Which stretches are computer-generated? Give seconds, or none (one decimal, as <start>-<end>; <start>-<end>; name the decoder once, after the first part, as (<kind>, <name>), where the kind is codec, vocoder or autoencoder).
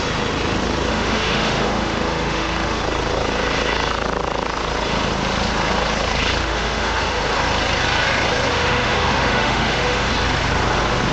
0.9-2.8 (autoencoder, DAC-VAE); 6.4-7.2; 8.5-10.1